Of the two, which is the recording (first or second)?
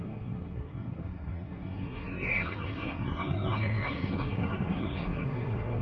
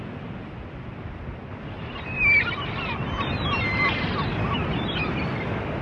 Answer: second